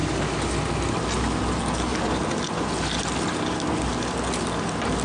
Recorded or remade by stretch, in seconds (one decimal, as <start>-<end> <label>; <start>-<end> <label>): 0.0-5.0 recorded